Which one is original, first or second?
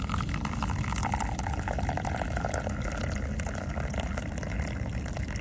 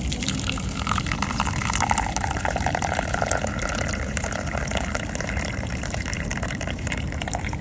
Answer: first